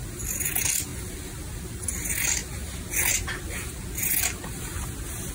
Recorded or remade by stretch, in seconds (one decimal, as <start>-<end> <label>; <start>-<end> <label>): 0.0-5.3 recorded